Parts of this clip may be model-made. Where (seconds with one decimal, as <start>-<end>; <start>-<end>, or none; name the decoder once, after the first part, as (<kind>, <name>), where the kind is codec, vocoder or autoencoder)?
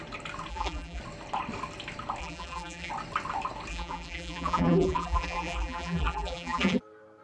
0.5-1.0 (vocoder, BigVGAN v2); 2.2-2.9; 3.7-6.8